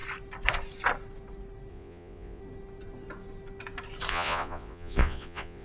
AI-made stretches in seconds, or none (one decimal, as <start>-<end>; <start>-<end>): 1.7-2.4; 4.1-5.6